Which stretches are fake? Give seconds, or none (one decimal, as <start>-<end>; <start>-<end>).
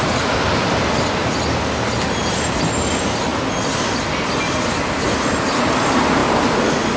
none